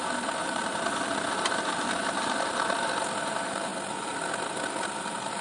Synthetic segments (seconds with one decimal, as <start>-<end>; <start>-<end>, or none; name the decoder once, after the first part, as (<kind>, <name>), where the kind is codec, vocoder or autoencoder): 0.0-3.7 (vocoder, BigVGAN v2); 5.0-5.4